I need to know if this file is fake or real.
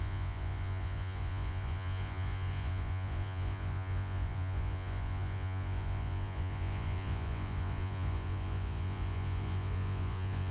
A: fake